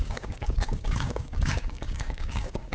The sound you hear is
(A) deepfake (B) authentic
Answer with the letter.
A